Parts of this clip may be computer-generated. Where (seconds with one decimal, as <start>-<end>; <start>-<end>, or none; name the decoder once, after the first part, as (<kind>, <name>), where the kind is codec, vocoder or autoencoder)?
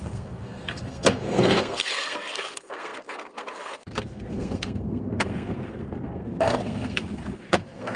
0.0-8.0 (codec, SNAC)